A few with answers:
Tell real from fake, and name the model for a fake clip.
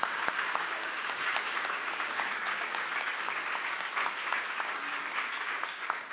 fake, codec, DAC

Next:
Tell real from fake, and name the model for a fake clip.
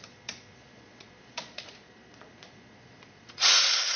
fake, vocoder, Vocos